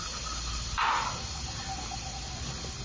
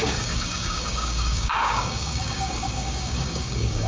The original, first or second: first